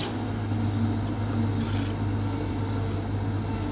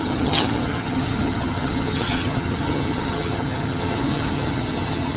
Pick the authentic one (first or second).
first